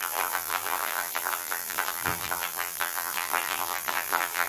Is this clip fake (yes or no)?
yes